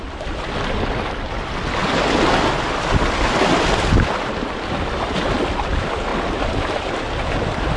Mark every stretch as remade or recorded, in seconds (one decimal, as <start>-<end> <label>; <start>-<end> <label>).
0.0-7.8 recorded